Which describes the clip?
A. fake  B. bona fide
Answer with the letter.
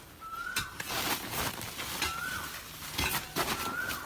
B